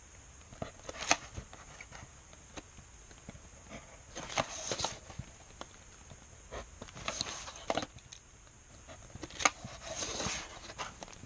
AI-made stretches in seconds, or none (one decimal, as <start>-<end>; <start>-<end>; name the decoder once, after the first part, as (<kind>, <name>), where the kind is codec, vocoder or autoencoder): none